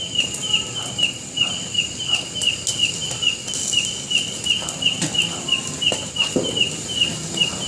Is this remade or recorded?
recorded